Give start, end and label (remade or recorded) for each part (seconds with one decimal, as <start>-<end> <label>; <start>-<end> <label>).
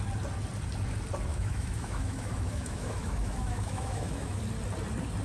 0.0-1.3 recorded; 1.3-4.4 remade; 4.4-5.2 recorded